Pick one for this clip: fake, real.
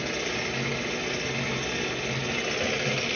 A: real